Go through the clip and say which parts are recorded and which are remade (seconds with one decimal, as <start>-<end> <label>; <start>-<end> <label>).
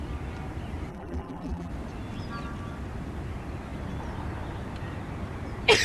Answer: 0.0-0.9 recorded; 0.9-1.7 remade; 1.7-5.8 recorded